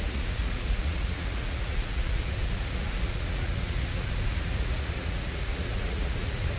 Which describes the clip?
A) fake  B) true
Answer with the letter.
A